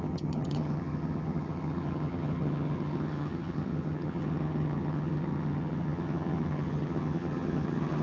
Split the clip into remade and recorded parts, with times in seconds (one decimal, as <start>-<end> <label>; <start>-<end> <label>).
0.0-8.0 remade

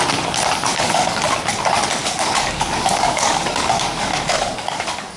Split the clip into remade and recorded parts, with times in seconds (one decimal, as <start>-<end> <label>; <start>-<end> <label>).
0.0-0.7 recorded; 0.7-1.3 remade; 1.3-2.0 recorded; 2.0-5.2 remade

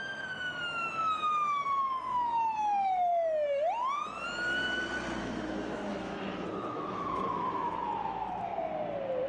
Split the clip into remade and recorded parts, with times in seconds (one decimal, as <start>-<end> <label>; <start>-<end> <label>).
0.0-3.1 remade; 3.1-5.2 recorded; 5.2-8.5 remade; 8.5-9.3 recorded

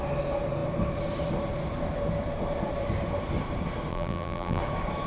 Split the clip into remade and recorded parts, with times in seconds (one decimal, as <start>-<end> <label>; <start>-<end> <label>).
0.0-3.9 recorded; 3.9-4.6 remade; 4.6-5.1 recorded